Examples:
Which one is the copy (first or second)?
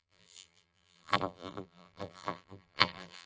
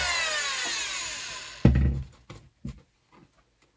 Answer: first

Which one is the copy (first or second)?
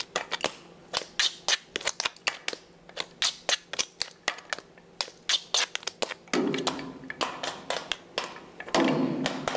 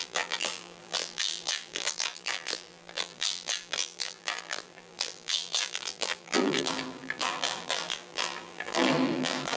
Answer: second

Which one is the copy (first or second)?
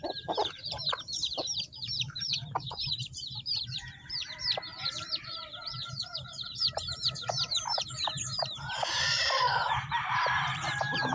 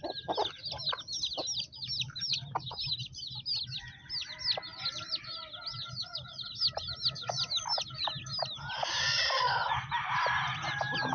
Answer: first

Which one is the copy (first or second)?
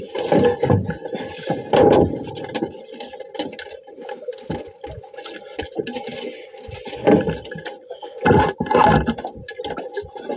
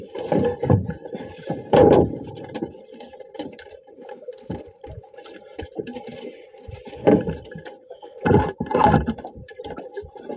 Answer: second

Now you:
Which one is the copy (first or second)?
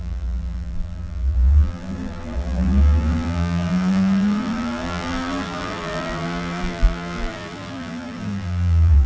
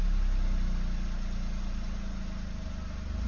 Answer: first